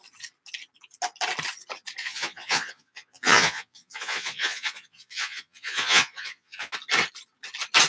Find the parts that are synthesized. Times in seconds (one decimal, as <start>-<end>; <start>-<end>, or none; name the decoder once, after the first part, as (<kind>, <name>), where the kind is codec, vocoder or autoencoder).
2.0-6.7 (vocoder, Vocos)